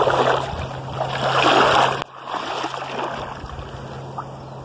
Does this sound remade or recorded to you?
recorded